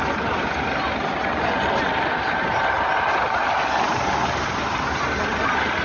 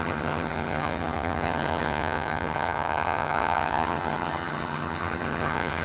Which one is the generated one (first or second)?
second